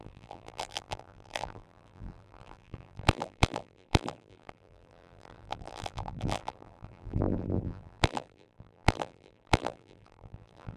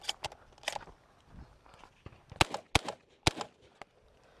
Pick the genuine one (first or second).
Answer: second